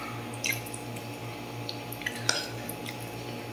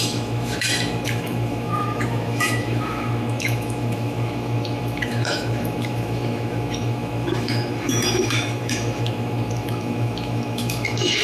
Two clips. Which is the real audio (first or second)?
first